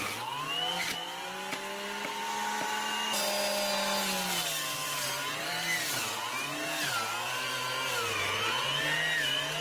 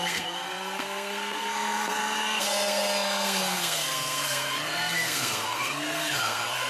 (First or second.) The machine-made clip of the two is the second